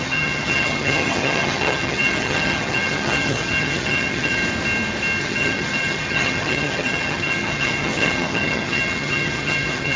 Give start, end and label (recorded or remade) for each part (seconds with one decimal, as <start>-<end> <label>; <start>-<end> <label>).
0.0-4.4 remade; 4.4-5.2 recorded; 5.2-10.0 remade